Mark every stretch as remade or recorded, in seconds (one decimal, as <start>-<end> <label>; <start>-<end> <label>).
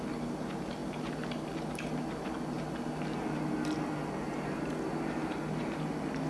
0.0-6.3 recorded